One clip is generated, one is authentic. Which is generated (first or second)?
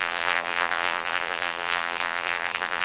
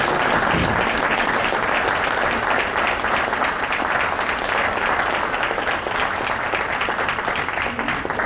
first